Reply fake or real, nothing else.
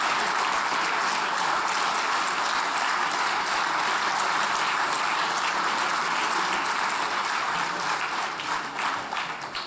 real